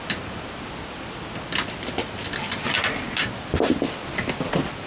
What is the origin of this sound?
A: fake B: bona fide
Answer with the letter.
B